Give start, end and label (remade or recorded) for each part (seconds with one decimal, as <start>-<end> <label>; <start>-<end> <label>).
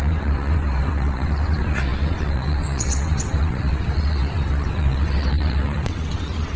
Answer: 0.0-6.6 remade